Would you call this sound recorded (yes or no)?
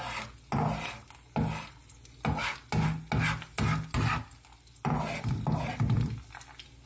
yes